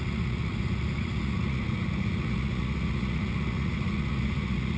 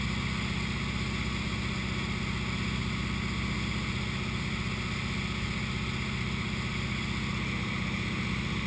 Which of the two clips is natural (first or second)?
second